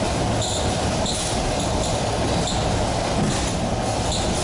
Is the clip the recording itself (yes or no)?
yes